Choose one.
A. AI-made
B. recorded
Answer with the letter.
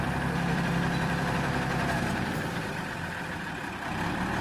A